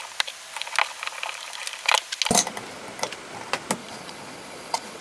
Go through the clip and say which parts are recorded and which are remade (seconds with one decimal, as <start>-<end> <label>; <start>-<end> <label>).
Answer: 0.0-3.8 recorded; 3.8-5.0 remade